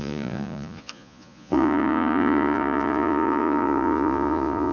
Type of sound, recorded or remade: remade